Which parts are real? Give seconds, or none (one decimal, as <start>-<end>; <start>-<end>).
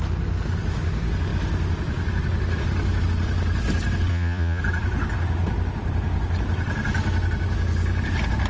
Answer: 0.0-4.1; 4.6-8.5